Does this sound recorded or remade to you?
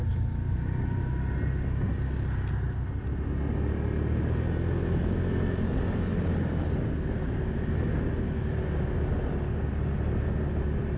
recorded